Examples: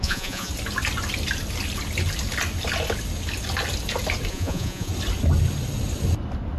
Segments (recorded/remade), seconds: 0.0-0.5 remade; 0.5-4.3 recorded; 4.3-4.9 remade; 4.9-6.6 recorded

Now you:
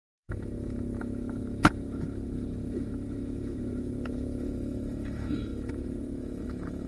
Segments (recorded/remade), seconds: 0.0-6.9 remade

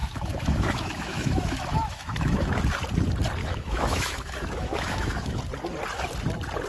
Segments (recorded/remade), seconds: 0.0-2.6 remade; 2.6-3.4 recorded; 3.4-5.4 remade; 5.4-6.7 recorded

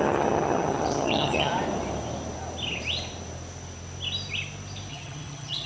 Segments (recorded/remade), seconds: 0.0-1.5 remade; 1.5-4.9 recorded; 4.9-5.7 remade

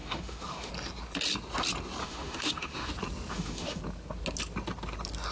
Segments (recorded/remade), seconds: 0.0-0.7 remade; 0.7-2.0 recorded; 2.0-2.9 remade; 2.9-3.3 recorded; 3.3-3.8 remade; 3.8-5.3 recorded